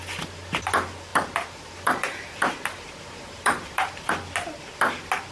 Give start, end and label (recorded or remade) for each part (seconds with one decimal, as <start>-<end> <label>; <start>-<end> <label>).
0.0-1.1 recorded; 1.1-4.1 remade; 4.1-5.3 recorded